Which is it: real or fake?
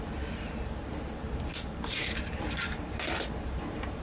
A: fake